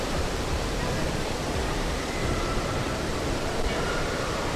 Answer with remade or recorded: remade